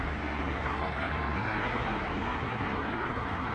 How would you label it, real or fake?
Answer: fake